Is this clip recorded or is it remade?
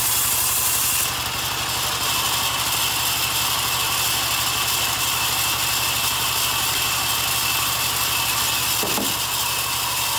recorded